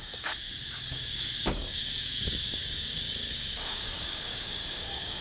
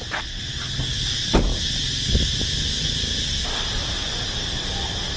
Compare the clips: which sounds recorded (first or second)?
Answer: second